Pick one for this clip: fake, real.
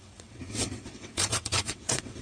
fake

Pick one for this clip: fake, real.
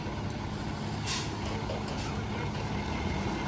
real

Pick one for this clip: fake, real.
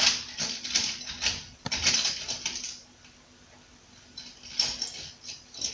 real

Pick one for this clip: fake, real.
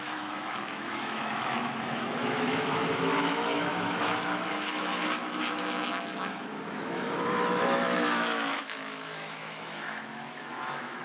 fake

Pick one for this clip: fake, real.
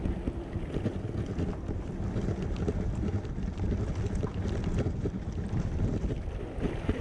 real